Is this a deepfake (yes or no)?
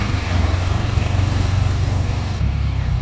yes